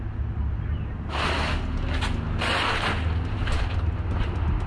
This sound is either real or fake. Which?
real